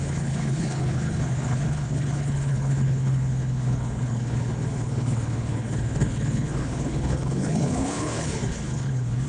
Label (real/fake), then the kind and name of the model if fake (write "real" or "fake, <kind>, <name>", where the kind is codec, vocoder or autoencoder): fake, codec, HILCodec